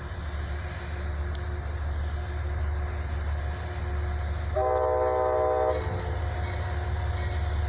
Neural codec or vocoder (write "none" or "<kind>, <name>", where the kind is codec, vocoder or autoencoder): none